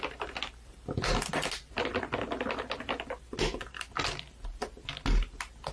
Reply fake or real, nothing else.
real